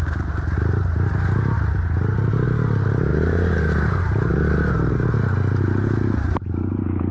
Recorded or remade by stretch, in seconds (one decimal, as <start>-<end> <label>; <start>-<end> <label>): 0.0-3.1 recorded; 3.1-4.3 remade; 4.3-7.1 recorded